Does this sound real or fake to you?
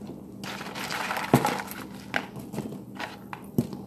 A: real